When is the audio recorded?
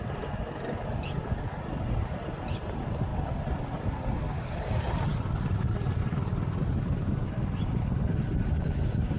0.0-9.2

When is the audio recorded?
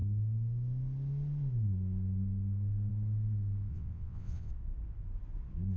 0.0-3.7; 4.5-5.8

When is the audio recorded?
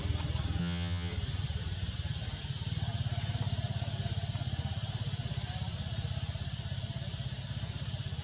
0.0-0.6; 1.1-8.2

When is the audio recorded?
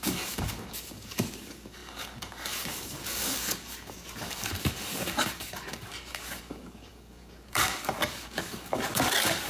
none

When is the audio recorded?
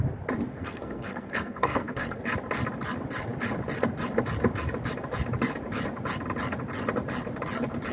0.0-0.5; 2.2-7.9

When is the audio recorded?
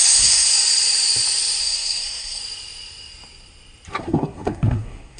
0.5-1.6; 2.4-4.0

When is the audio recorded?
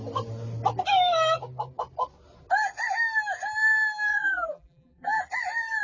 0.0-4.1; 5.2-5.8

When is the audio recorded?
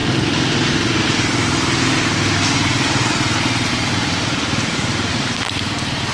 0.0-3.7